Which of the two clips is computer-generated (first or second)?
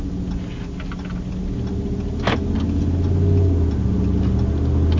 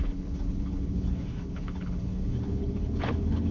second